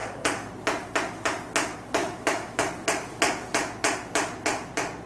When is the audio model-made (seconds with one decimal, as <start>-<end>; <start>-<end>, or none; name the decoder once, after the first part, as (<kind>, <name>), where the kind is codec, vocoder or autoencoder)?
2.0-2.7 (autoencoder, DAC-VAE)